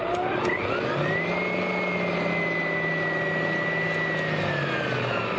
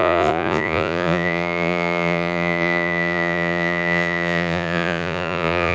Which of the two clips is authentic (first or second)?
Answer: first